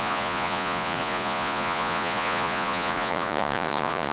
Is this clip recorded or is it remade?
remade